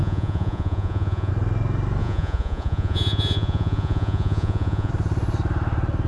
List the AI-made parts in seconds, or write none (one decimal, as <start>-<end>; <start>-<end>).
0.0-1.3; 2.0-4.9